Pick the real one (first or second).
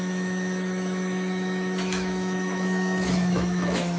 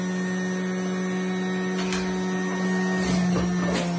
second